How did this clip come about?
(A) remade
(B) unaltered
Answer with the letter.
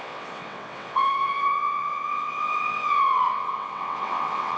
A